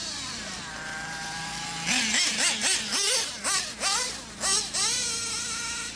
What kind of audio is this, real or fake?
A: real